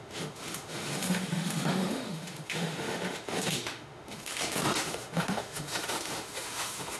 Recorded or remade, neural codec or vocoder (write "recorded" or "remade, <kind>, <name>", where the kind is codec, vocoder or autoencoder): remade, autoencoder, DAC-VAE